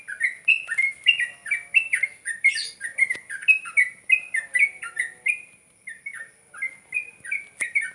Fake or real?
real